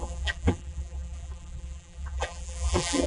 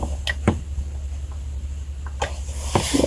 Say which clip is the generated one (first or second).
first